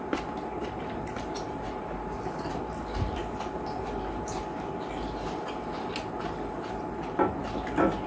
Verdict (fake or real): real